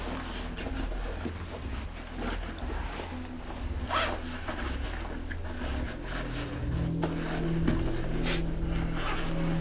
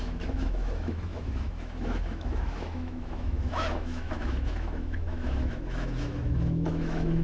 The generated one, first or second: second